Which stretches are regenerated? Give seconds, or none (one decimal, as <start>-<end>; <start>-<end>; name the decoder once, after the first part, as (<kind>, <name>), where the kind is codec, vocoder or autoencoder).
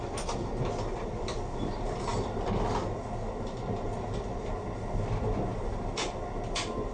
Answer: none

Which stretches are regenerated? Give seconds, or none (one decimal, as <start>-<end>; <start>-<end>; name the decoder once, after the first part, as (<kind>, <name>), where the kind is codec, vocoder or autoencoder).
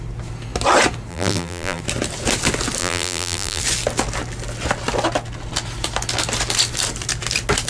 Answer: 1.1-1.8 (vocoder, BigVGAN v2); 2.8-3.6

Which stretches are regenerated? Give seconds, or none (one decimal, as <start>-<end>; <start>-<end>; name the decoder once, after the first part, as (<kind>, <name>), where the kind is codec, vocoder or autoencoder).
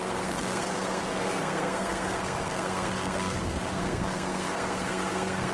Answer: 0.0-5.5 (codec, SNAC)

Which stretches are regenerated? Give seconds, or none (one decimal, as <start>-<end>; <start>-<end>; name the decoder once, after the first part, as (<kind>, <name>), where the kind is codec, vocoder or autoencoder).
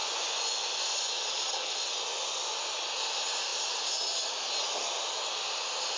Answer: 0.0-1.1 (vocoder, Vocos); 2.1-2.6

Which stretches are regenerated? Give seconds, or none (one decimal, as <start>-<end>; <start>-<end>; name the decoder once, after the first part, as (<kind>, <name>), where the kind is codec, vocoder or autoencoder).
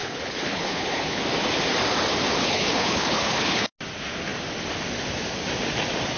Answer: 0.0-1.2 (codec, HILCodec); 2.4-3.7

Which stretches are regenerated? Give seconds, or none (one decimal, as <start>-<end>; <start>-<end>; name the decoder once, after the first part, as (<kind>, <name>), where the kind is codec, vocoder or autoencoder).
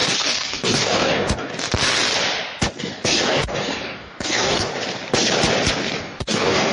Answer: 0.0-1.5 (codec, DAC); 2.8-4.7; 6.0-6.7